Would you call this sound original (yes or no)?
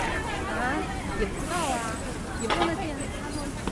yes